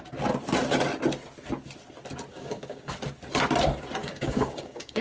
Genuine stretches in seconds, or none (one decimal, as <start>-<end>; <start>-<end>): 0.0-2.3; 2.9-4.0